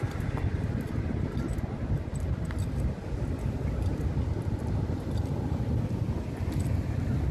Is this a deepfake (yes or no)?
no